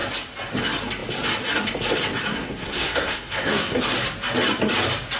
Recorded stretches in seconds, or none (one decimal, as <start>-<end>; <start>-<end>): 0.0-2.3; 3.8-5.2